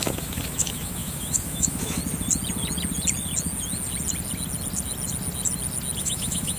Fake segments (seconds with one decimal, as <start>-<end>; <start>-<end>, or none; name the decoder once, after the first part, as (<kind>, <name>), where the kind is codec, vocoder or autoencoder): 0.0-2.0 (autoencoder, DAC-VAE); 6.0-6.6

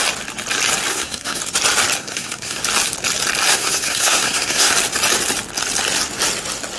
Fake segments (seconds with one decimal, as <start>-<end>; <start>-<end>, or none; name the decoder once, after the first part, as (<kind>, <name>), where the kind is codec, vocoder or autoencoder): 0.9-1.4 (codec, SNAC); 2.0-2.6; 3.5-4.7